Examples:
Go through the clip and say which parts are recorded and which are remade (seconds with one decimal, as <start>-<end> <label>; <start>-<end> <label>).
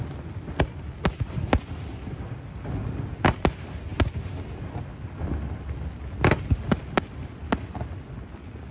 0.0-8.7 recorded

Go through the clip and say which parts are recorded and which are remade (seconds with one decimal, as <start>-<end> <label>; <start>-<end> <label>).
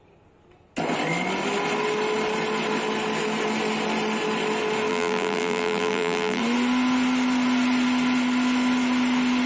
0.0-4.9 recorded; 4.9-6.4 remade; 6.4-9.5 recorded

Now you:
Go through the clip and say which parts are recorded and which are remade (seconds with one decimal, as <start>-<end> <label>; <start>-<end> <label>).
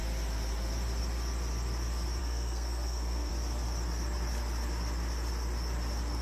0.0-2.2 recorded; 2.2-3.3 remade; 3.3-6.2 recorded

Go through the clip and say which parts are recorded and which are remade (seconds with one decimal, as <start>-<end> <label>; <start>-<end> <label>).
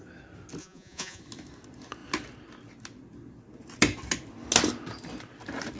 0.0-0.6 recorded; 0.6-1.2 remade; 1.2-5.8 recorded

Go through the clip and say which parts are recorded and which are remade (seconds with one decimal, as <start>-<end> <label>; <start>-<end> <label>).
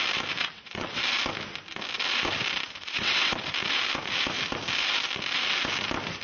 0.0-0.4 recorded; 0.4-1.0 remade; 1.0-2.8 recorded; 2.8-3.5 remade; 3.5-6.2 recorded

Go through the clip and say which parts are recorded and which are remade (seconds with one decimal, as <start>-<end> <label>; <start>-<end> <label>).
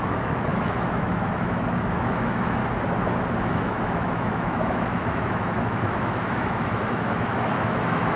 0.0-2.6 remade; 2.6-3.4 recorded; 3.4-8.2 remade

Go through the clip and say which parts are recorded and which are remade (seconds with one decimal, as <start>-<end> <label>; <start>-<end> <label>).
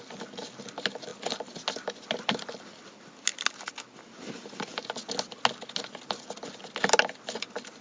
0.0-7.8 recorded